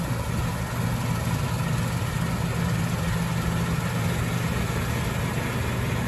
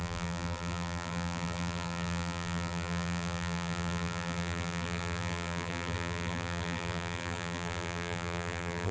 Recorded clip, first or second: first